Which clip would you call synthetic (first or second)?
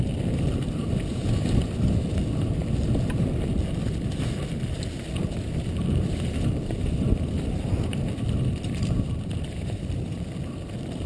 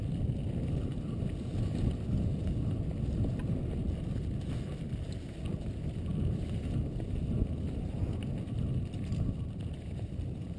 first